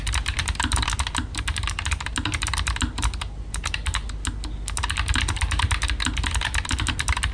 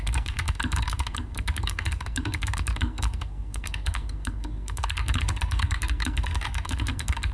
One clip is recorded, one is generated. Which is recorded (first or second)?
first